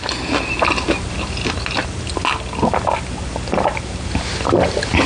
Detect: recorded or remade recorded